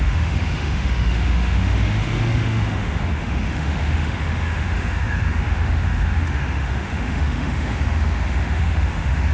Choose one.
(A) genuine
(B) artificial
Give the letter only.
B